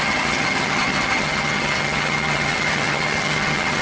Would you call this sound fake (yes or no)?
yes